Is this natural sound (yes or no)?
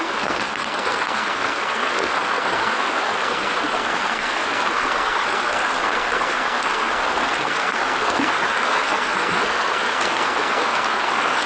no